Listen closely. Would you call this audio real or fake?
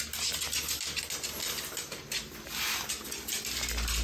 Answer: real